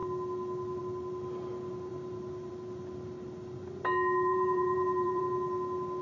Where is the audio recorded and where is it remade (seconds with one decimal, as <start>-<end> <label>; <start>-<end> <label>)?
0.0-4.3 recorded; 4.3-5.2 remade; 5.2-6.0 recorded